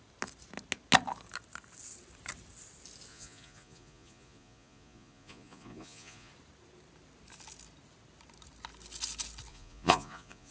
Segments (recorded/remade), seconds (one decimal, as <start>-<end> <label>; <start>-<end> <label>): 0.0-3.1 recorded; 3.1-6.3 remade; 6.3-9.5 recorded; 9.5-10.5 remade